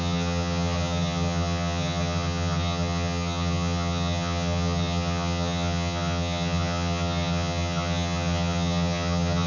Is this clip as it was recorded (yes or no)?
no